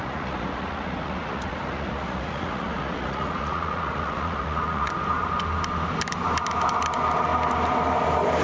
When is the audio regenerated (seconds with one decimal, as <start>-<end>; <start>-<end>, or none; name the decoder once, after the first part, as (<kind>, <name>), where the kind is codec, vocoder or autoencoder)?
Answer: 0.0-4.9 (vocoder, Vocos)